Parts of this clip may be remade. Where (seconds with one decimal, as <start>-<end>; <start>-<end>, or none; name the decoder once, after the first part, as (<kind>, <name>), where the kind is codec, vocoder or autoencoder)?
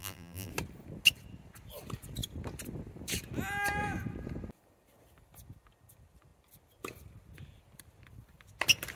0.0-0.5 (vocoder, BigVGAN v2)